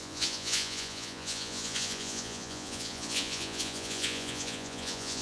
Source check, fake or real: fake